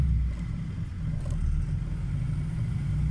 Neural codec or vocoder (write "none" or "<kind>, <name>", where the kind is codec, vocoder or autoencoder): none